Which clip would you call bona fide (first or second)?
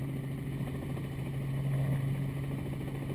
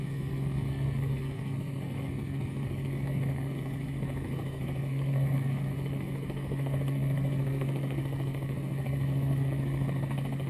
first